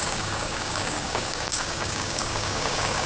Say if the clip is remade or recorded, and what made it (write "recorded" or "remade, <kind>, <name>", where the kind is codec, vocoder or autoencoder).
remade, codec, DAC